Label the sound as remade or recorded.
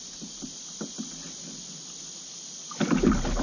recorded